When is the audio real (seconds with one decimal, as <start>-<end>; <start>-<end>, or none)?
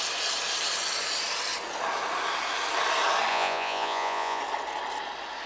0.0-3.3; 4.4-5.5